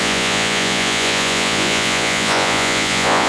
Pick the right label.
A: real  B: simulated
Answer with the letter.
B